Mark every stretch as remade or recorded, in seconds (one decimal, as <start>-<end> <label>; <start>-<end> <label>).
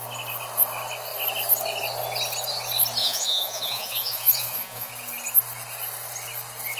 0.0-3.0 recorded; 3.0-4.9 remade; 4.9-6.8 recorded